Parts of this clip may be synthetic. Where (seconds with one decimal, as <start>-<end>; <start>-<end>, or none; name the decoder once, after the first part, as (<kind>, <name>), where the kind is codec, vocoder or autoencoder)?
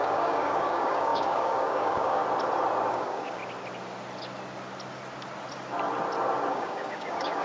0.0-2.2 (codec, DAC); 2.9-3.4; 6.5-7.4